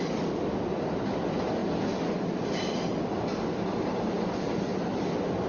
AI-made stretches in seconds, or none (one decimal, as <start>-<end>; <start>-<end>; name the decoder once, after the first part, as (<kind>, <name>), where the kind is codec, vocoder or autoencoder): none